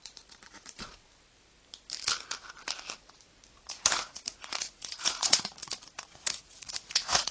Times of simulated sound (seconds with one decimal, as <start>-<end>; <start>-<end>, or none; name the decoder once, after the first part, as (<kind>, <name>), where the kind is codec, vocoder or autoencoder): 0.0-1.0 (vocoder, Vocos); 3.6-7.3

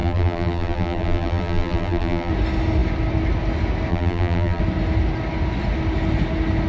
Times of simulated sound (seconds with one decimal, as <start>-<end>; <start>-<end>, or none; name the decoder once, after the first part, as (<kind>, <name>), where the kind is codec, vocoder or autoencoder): 0.0-2.3 (vocoder, BigVGAN v2); 3.9-4.6

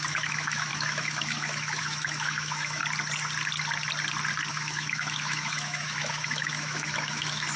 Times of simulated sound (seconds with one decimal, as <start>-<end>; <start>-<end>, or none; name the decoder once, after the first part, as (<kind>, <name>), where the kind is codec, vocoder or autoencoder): 0.0-2.8 (autoencoder, DAC-VAE); 4.5-7.6

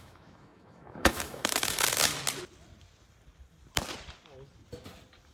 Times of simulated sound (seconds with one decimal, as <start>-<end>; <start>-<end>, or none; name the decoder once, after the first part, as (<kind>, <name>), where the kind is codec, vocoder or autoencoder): 0.0-2.1 (autoencoder, DAC-VAE)

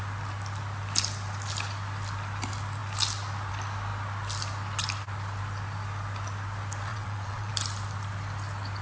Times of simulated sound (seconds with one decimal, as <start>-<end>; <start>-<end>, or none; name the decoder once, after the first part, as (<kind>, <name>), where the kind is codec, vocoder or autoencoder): 6.9-7.5 (vocoder, WaveNeXt)